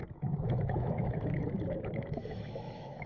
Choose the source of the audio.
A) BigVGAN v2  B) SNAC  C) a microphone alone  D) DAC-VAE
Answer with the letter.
D